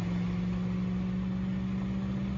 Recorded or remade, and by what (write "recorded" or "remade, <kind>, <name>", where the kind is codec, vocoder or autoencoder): recorded